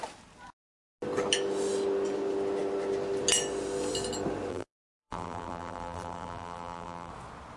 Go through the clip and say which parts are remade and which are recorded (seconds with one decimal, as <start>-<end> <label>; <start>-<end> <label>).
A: 0.0-4.5 recorded; 4.5-7.1 remade; 7.1-7.6 recorded